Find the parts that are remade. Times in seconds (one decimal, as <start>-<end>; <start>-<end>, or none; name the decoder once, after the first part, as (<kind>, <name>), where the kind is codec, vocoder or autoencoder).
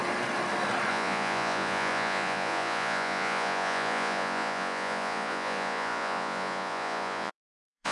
0.9-7.9 (vocoder, Vocos)